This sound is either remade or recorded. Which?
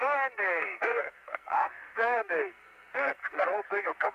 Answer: remade